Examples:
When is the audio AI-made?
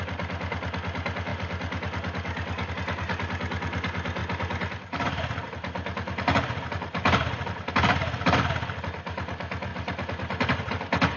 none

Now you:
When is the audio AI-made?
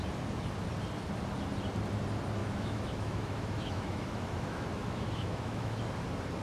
2.4-5.9 (autoencoder, DAC-VAE)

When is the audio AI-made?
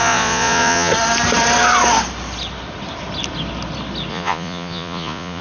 0.0-0.9 (vocoder, Vocos); 4.1-5.4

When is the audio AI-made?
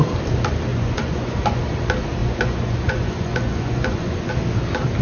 0.7-1.6 (vocoder, Vocos); 2.2-4.3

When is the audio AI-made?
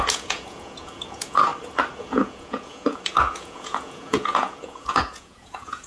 0.0-1.5 (vocoder, Vocos); 2.0-5.9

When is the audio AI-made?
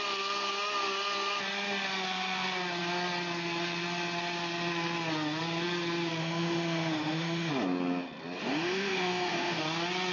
6.2-7.5 (autoencoder, DAC-VAE); 8.4-9.6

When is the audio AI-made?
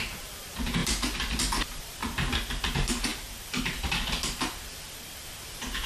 0.0-2.0 (vocoder, BigVGAN v2); 2.7-5.9